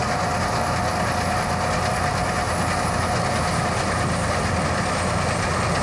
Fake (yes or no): no